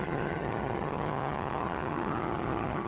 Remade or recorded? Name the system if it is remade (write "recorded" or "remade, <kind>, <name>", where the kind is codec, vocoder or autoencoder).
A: remade, vocoder, HiFi-GAN